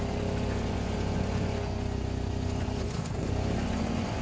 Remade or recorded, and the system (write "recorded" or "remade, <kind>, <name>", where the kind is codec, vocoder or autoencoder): remade, vocoder, Vocos